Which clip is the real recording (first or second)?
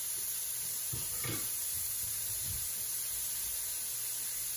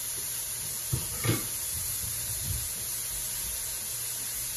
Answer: first